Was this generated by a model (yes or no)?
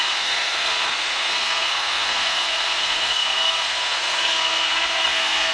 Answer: yes